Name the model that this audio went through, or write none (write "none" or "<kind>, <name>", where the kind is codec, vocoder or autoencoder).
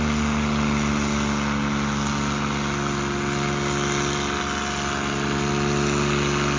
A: none